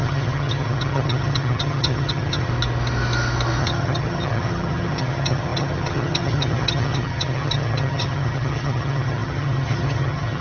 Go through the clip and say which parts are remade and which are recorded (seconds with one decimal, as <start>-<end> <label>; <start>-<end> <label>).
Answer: 0.0-2.5 remade; 2.5-3.6 recorded; 3.6-10.4 remade